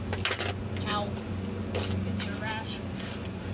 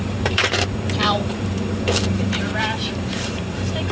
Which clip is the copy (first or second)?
second